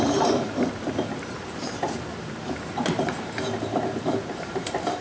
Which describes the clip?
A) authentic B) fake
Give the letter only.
B